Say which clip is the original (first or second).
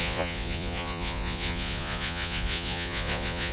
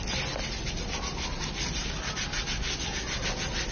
second